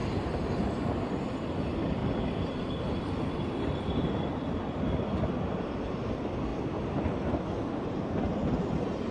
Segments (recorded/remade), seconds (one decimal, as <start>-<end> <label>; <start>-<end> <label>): 0.0-9.1 recorded